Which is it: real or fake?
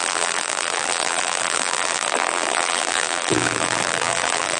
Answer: fake